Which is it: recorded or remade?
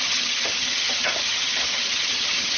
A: remade